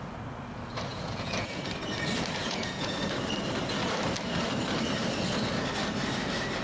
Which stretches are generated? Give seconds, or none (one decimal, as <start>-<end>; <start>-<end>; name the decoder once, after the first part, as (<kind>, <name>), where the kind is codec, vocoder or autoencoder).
0.9-1.6 (vocoder, Vocos); 2.4-3.0